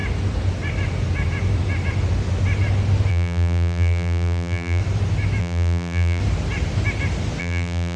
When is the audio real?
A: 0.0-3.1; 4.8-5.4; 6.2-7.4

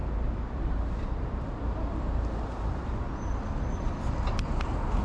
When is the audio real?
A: 3.0-5.0

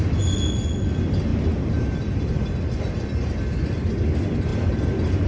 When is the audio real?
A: 0.0-1.3; 2.9-4.5

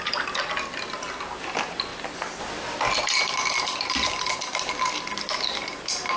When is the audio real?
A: 0.0-6.2

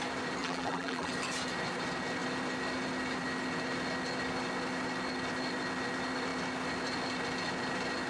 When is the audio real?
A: 0.0-0.4; 1.1-8.1

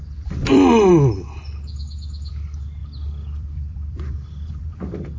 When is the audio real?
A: 0.9-2.3

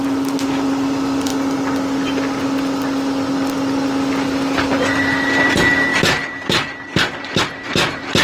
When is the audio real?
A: 1.3-4.6; 5.9-7.4